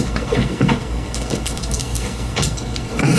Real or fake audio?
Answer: fake